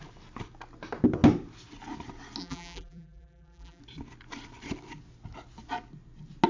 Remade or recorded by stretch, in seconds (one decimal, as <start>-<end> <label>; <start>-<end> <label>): 0.0-2.4 recorded; 2.4-3.8 remade; 3.8-6.5 recorded